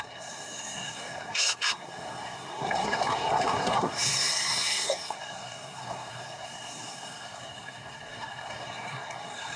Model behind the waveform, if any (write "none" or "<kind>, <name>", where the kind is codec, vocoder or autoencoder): codec, SNAC